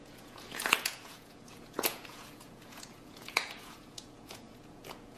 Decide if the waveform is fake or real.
fake